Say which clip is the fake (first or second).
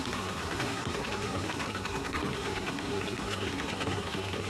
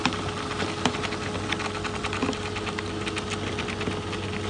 first